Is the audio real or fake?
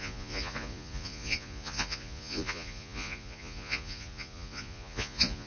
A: fake